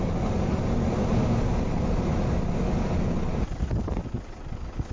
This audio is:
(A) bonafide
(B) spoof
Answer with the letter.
A